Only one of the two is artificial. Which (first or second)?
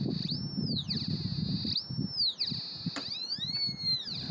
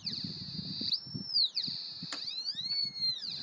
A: second